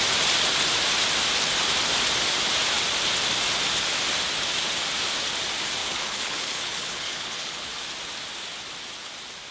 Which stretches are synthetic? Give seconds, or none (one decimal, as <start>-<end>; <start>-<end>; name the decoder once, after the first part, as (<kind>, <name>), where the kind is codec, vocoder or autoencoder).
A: 5.8-7.8 (codec, HILCodec)